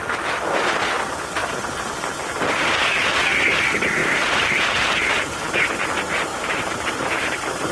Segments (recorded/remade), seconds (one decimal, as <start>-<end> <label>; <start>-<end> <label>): 0.0-4.0 recorded; 4.0-5.5 remade; 5.5-6.3 recorded; 6.3-7.7 remade